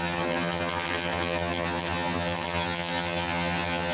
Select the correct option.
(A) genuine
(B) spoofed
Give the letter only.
B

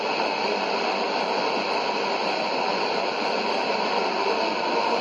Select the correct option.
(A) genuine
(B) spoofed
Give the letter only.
A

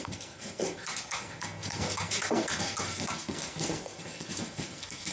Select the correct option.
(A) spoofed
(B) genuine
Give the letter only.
A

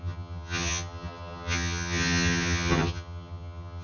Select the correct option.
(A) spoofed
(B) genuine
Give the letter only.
A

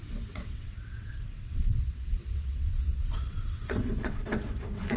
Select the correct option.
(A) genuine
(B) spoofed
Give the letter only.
B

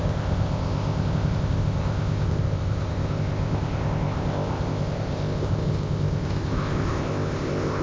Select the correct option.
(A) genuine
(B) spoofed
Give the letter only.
B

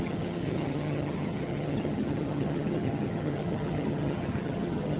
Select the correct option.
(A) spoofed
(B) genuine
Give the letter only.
A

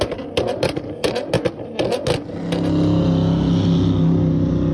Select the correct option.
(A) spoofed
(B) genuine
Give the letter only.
B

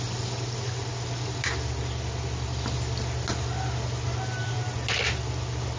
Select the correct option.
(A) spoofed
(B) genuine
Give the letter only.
B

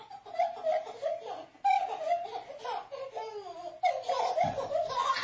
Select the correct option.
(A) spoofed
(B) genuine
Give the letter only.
B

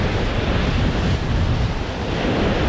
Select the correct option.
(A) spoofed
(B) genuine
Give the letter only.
B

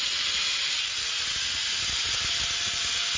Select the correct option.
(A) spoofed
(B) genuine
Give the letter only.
B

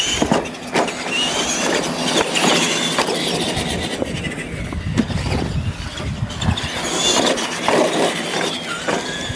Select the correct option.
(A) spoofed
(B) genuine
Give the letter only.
B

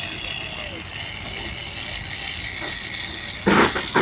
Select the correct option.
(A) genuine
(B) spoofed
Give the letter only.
A